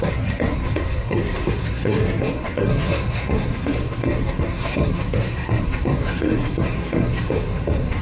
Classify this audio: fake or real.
fake